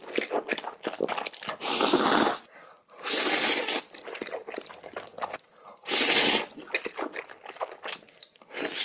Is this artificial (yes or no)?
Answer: no